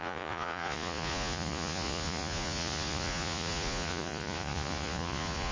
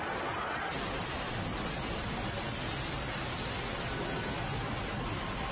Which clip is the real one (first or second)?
second